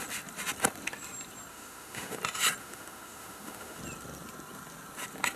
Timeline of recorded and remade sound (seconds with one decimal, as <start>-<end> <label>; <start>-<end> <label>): 0.0-1.5 recorded; 1.5-2.2 remade; 2.2-2.6 recorded; 2.6-3.8 remade; 3.8-5.4 recorded